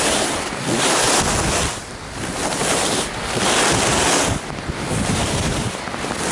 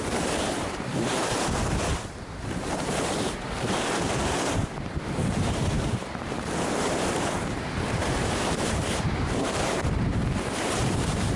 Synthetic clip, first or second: second